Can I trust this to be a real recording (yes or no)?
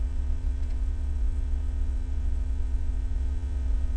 no